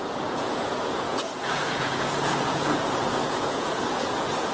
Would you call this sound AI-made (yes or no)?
yes